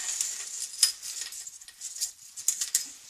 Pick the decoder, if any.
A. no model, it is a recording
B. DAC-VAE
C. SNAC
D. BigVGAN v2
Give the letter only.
A